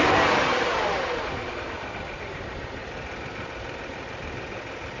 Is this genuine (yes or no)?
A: yes